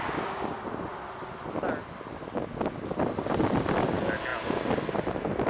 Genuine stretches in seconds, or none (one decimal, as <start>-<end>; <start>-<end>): 0.0-5.5